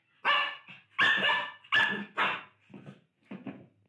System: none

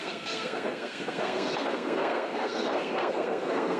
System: codec, SNAC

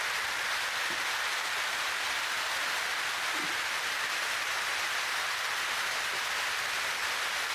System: none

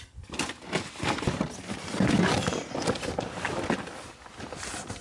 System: none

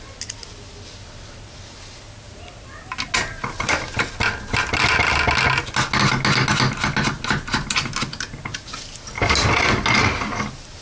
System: none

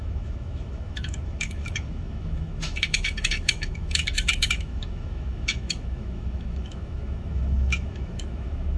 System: autoencoder, DAC-VAE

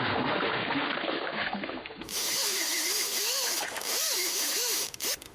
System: autoencoder, DAC-VAE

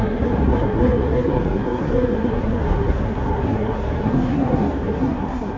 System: codec, SNAC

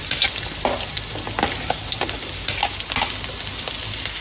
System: none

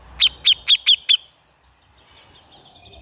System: none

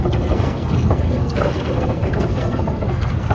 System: codec, SNAC